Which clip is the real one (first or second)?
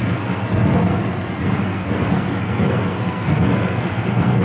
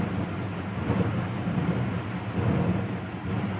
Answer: second